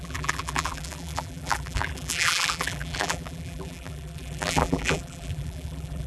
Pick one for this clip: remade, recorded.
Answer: remade